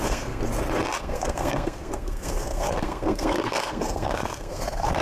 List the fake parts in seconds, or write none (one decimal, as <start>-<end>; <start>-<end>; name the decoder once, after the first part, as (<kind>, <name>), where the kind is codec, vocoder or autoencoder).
0.0-0.4 (codec, SNAC); 1.0-5.0